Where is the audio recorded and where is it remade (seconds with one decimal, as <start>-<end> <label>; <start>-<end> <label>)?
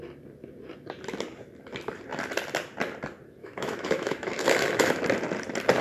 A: 0.0-3.4 recorded; 3.4-5.0 remade; 5.0-5.8 recorded